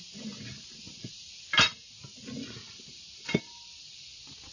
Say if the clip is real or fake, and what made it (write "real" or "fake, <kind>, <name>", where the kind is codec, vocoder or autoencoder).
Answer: real